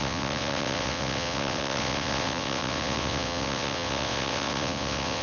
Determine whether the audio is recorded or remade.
remade